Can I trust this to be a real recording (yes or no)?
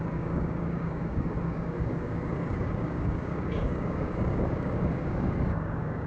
no